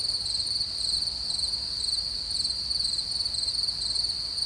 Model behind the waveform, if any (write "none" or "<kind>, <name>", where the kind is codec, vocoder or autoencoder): none